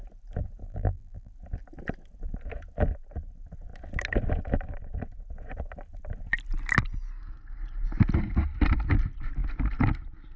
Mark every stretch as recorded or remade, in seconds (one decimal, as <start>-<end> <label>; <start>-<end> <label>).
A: 0.0-0.6 recorded; 0.6-1.3 remade; 1.3-10.4 recorded